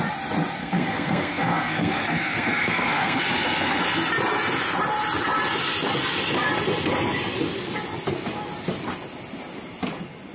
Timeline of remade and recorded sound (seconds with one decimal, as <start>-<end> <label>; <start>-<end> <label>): 0.0-0.6 recorded; 0.6-3.2 remade; 3.2-10.3 recorded